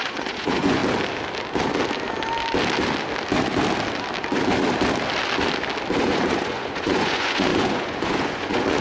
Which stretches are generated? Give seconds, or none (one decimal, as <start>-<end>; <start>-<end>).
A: 0.0-0.8; 6.0-8.8

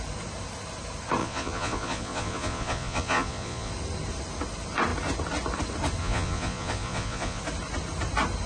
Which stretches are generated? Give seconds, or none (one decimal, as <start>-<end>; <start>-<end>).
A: 1.2-3.7; 6.0-7.4

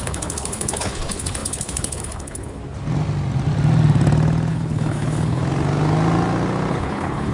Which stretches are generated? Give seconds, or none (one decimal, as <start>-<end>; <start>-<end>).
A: 0.0-2.6; 4.5-5.4; 6.7-7.3

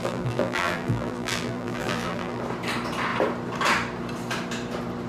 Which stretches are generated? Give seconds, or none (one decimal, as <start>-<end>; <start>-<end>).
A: 0.0-2.4

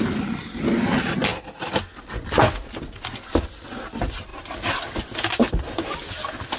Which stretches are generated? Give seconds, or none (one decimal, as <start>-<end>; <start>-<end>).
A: none

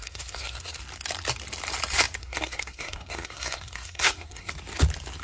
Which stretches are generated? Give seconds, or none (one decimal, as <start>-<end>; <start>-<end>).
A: 0.0-0.8; 2.2-4.5

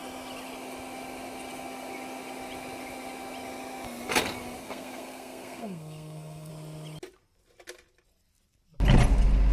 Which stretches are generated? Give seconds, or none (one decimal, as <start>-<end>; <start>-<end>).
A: 4.6-6.5

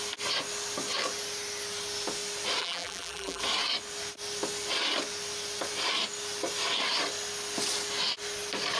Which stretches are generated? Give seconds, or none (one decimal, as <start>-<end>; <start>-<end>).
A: 2.6-3.4